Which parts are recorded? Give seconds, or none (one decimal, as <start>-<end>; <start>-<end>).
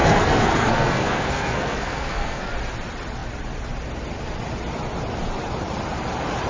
2.5-6.5